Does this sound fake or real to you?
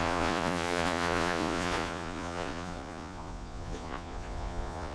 fake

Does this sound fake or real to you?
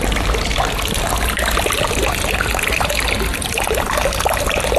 real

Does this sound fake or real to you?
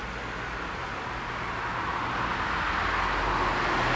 real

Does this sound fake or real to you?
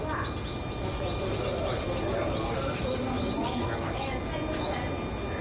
real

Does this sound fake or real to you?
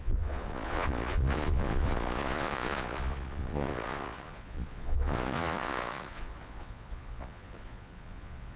fake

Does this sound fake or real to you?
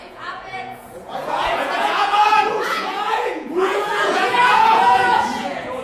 fake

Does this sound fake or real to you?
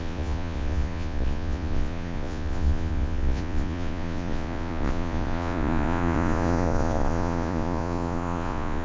fake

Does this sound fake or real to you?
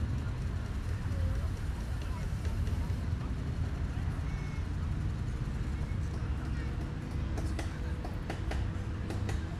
real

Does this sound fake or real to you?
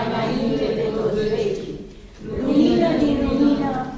real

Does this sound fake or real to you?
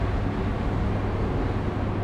real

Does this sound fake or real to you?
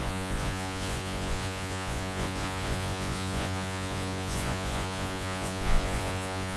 fake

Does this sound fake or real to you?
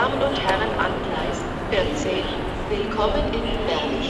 real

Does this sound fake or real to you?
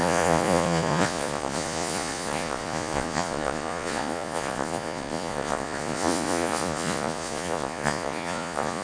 fake